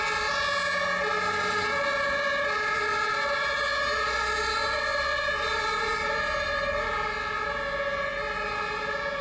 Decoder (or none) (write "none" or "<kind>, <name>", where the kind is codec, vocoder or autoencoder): none